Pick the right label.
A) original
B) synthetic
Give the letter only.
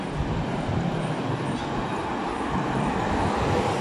A